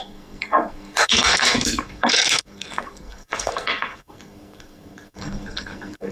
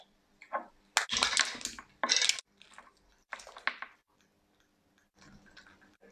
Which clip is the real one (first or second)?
second